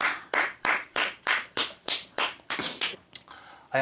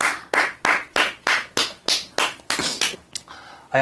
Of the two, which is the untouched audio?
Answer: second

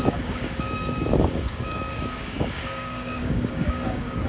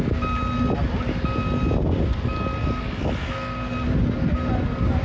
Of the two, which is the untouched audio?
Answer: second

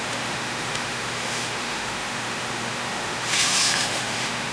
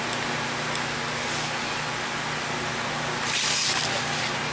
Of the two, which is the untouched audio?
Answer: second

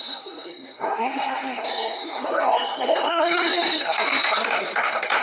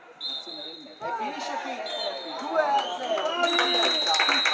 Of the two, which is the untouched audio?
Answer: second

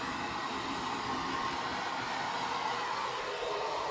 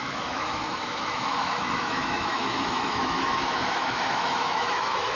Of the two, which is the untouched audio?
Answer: first